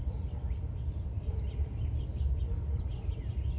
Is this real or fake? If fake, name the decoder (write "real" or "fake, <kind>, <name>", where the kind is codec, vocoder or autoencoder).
fake, vocoder, BigVGAN v2